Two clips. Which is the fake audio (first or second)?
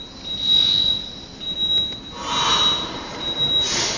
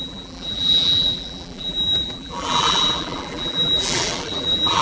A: second